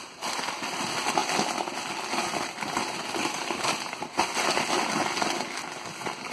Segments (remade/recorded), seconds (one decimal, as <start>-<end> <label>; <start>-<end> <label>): 0.0-6.3 recorded